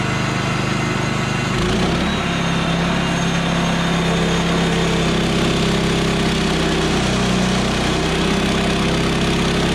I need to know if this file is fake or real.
real